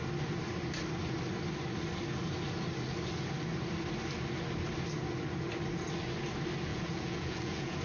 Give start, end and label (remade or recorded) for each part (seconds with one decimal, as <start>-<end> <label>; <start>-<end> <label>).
0.0-6.7 recorded; 6.7-7.8 remade